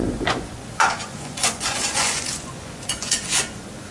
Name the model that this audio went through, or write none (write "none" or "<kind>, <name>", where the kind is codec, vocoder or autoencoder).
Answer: vocoder, Vocos